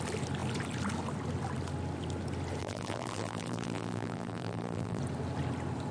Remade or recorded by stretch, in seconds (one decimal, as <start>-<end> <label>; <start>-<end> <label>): 0.0-2.6 recorded; 2.6-5.0 remade; 5.0-5.9 recorded